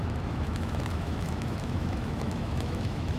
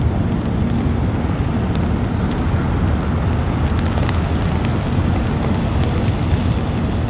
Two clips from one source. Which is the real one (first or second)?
second